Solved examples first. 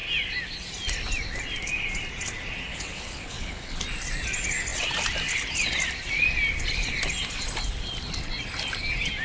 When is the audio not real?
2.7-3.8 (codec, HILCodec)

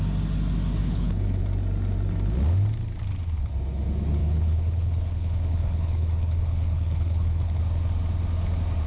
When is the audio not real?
0.8-1.4 (codec, HILCodec); 4.2-7.6

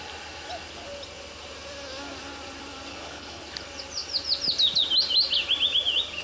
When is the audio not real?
2.9-3.4 (codec, HILCodec)

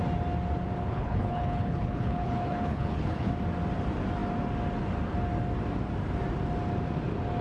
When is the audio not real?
0.8-3.3 (codec, HILCodec)

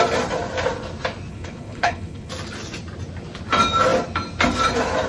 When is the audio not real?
1.3-2.3 (codec, HILCodec)

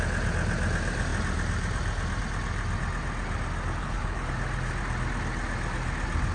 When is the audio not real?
3.8-4.3 (codec, HILCodec)